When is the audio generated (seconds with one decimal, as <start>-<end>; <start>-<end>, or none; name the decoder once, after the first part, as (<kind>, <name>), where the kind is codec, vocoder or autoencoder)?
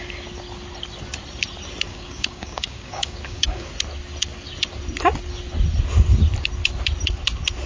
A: 1.9-3.7 (codec, DAC)